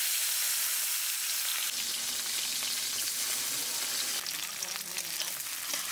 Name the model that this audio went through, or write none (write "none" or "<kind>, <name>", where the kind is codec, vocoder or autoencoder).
none